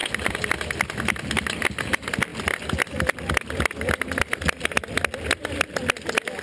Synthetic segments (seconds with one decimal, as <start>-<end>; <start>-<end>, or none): 0.0-0.5